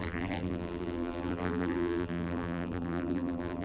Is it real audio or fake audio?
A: fake